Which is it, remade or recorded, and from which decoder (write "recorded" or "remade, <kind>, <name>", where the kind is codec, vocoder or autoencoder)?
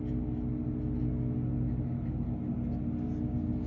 recorded